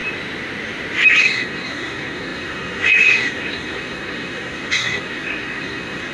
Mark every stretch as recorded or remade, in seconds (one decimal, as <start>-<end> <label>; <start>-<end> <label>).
0.0-1.2 recorded; 1.2-6.1 remade